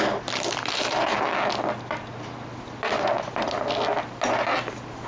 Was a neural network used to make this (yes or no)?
no